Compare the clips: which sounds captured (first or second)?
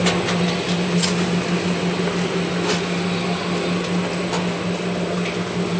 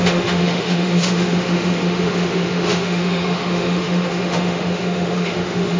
first